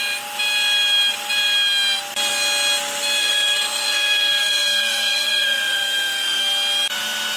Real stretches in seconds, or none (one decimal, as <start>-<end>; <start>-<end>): 0.0-3.2; 6.4-7.4